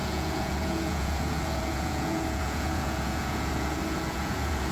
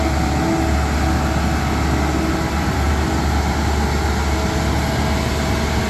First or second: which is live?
second